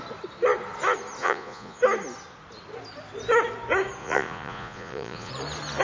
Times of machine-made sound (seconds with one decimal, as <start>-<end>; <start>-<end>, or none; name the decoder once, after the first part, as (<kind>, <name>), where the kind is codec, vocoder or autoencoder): 1.2-1.8 (vocoder, Vocos); 4.0-5.3